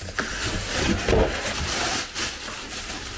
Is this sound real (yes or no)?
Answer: yes